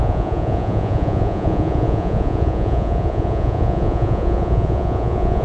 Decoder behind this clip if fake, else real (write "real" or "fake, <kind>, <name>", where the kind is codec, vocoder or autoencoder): fake, vocoder, Vocos